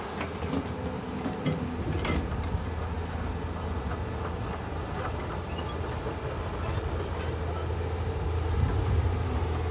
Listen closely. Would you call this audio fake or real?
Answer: real